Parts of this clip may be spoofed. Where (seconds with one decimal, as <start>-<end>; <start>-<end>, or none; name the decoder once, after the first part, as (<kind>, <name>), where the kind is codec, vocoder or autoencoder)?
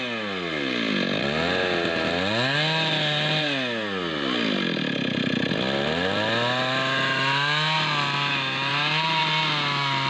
none